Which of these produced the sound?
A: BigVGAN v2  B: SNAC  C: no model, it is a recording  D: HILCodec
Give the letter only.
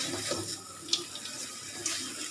C